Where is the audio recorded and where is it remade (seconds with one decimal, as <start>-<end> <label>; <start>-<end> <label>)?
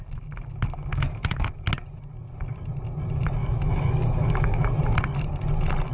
0.0-0.9 recorded; 0.9-1.7 remade; 1.7-3.4 recorded; 3.4-4.6 remade; 4.6-5.9 recorded